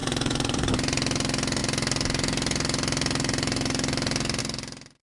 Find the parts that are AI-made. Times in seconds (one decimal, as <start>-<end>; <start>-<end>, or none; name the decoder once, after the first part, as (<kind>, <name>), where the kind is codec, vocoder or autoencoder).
0.0-0.7 (vocoder, Vocos)